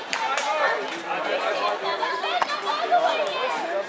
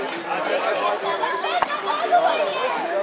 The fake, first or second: second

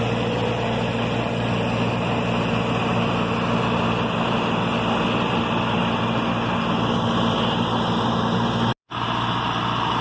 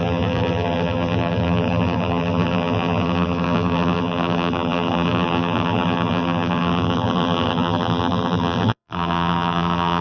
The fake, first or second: second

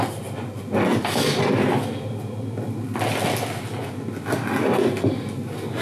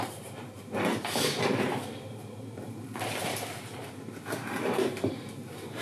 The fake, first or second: second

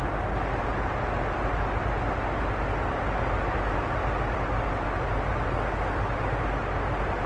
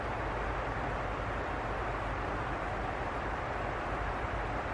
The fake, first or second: second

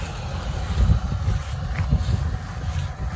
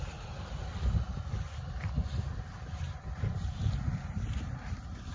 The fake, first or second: second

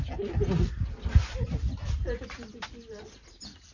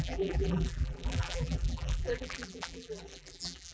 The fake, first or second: second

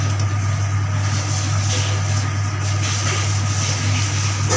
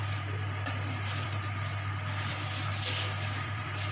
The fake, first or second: second